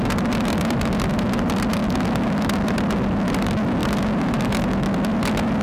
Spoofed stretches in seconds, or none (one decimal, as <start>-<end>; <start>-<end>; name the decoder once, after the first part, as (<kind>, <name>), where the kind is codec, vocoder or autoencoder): none